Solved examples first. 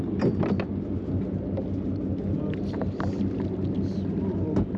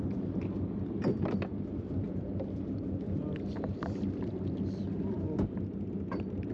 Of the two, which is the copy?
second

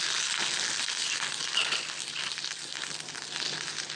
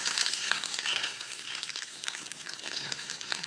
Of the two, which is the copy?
second